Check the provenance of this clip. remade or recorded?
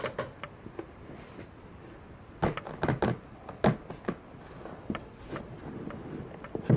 recorded